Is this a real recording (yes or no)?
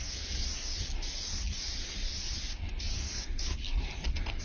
yes